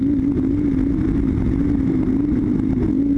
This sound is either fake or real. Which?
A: real